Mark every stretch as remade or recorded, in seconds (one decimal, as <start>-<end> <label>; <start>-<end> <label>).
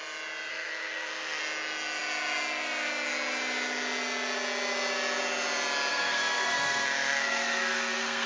0.0-0.5 recorded; 0.5-1.4 remade; 1.4-5.9 recorded; 5.9-8.3 remade